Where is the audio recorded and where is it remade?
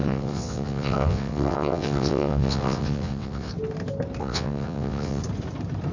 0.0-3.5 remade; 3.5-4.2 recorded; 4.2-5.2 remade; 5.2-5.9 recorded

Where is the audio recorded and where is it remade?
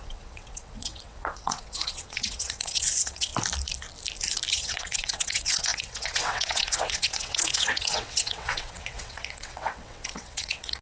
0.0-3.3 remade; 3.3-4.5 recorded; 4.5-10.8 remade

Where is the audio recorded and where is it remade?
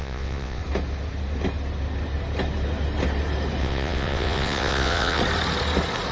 0.0-0.6 remade; 0.6-3.6 recorded; 3.6-5.2 remade; 5.2-6.1 recorded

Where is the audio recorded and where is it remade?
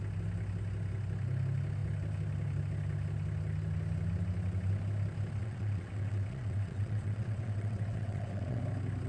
0.0-5.4 recorded; 5.4-8.6 remade; 8.6-9.1 recorded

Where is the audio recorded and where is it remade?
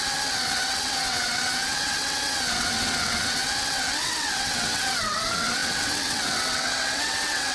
0.0-7.5 remade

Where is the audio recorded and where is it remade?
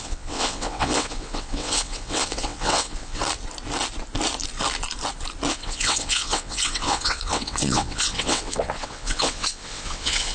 0.0-3.2 remade; 3.2-5.5 recorded; 5.5-10.3 remade